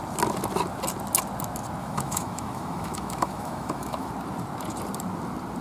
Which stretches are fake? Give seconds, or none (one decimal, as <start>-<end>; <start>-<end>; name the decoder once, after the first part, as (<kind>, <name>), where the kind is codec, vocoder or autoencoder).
1.8-4.1 (autoencoder, DAC-VAE)